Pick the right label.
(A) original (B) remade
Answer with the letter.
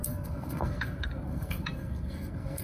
B